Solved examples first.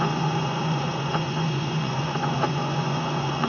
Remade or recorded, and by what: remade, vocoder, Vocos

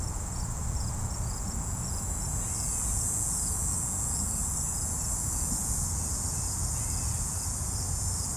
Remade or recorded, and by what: remade, vocoder, Vocos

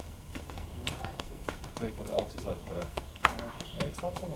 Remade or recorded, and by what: remade, codec, SNAC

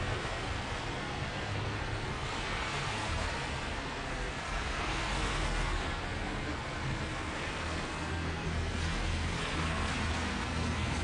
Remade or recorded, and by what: remade, codec, SNAC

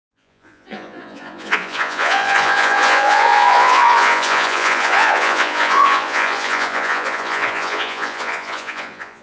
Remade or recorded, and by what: remade, vocoder, Vocos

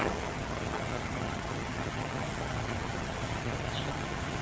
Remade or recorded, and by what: remade, vocoder, HiFi-GAN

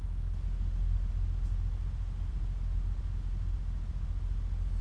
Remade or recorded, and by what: recorded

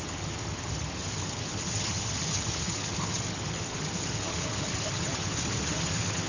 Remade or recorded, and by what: remade, vocoder, HiFi-GAN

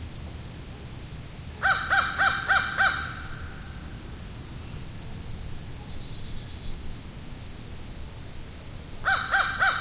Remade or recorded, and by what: recorded